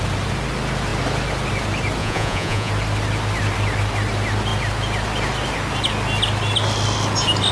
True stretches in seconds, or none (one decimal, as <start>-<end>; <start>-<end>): 0.0-2.0; 2.7-7.5